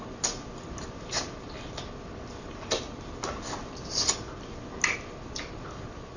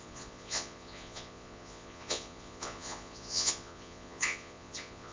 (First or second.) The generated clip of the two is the second